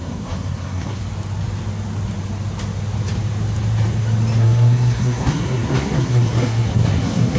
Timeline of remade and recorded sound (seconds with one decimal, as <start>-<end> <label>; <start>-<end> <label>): 0.0-1.0 remade; 1.0-4.4 recorded; 4.4-7.4 remade